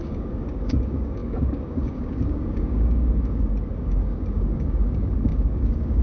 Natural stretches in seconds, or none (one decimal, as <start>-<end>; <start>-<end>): none